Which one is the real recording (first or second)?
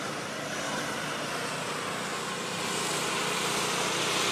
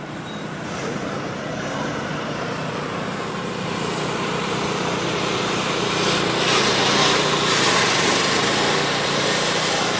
first